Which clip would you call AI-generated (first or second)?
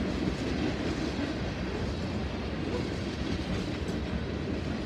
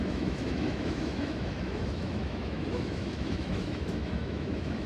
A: second